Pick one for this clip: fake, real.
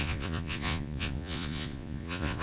fake